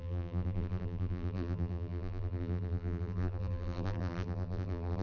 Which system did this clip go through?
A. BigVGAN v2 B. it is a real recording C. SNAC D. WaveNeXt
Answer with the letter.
A